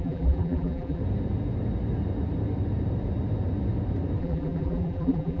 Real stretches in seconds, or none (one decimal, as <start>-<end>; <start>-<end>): 1.0-4.2